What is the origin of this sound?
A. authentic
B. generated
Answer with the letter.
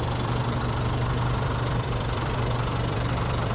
B